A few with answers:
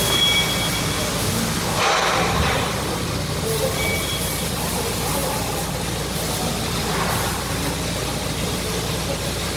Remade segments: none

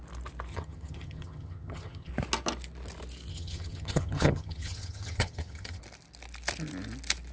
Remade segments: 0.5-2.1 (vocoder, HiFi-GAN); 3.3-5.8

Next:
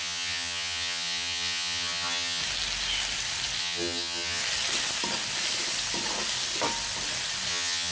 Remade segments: 0.0-2.4 (vocoder, HiFi-GAN); 3.6-4.4; 7.5-7.9

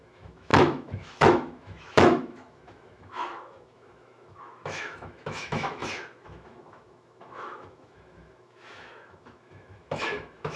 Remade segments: 0.0-10.6 (autoencoder, DAC-VAE)

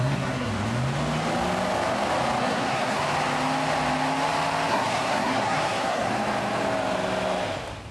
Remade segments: 0.0-0.5 (codec, SNAC); 2.4-3.0; 4.7-6.1